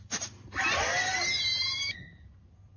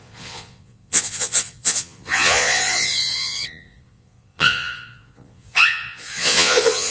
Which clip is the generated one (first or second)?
second